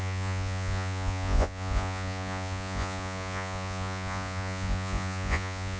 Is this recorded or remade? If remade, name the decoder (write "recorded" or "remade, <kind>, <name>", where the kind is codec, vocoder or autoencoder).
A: remade, vocoder, Vocos